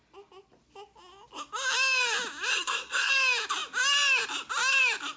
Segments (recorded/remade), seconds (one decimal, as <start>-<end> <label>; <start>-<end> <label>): 0.0-2.5 recorded; 2.5-3.1 remade; 3.1-5.2 recorded